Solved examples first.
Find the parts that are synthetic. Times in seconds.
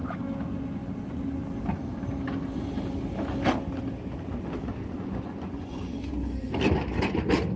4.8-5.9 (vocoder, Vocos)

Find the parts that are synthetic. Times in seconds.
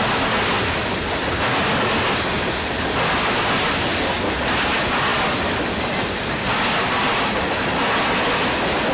none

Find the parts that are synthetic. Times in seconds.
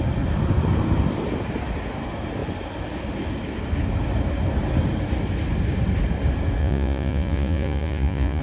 6.6-8.4 (vocoder, Vocos)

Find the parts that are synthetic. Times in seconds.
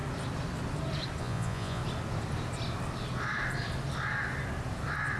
1.2-1.8 (vocoder, Vocos)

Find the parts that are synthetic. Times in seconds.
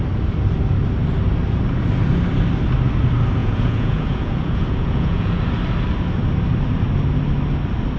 3.4-5.4 (vocoder, Vocos)